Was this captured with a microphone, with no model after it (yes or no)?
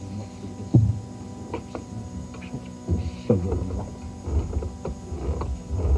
yes